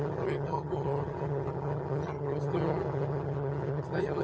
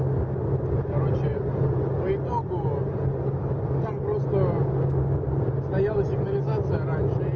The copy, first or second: first